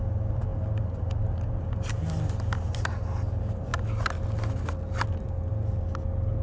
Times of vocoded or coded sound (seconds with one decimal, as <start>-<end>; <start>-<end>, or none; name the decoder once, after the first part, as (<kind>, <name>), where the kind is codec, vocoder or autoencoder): none